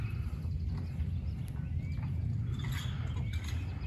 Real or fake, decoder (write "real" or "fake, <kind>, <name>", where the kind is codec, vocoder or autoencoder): real